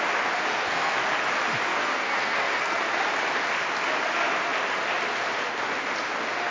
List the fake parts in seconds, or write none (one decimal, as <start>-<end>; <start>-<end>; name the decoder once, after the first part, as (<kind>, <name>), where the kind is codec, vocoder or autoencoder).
0.5-1.0 (codec, SNAC); 1.7-2.8